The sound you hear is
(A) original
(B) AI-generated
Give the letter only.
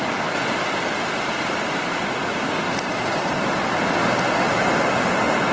A